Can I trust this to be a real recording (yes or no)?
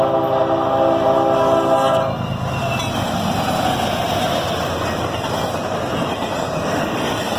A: yes